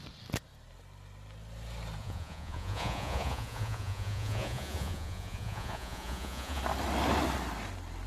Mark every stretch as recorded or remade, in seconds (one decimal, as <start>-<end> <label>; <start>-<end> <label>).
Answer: 0.0-2.0 recorded; 2.0-6.6 remade; 6.6-8.1 recorded